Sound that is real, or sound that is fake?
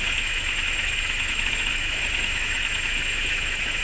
fake